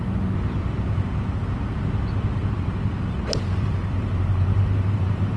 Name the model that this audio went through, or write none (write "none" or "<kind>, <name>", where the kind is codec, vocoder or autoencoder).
none